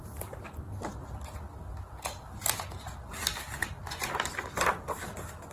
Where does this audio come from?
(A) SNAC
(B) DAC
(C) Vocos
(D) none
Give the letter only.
D